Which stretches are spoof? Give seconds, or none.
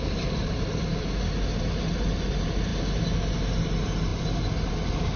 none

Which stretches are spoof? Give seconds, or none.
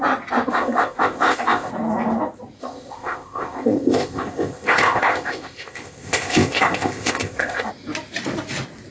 0.5-1.7; 2.6-7.7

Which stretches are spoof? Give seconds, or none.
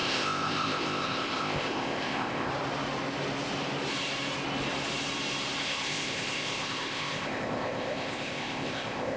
0.0-2.5; 5.6-9.2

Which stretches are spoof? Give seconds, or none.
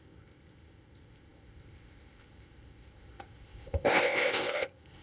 0.0-5.0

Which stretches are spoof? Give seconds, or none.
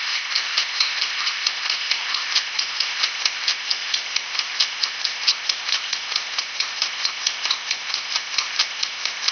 0.0-9.3